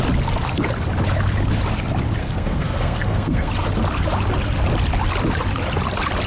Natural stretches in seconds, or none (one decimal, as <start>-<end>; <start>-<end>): 0.0-2.2; 3.5-6.3